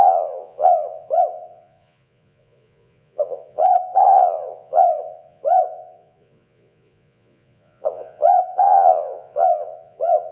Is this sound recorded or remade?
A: remade